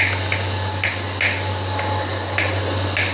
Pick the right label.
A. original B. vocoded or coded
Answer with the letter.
A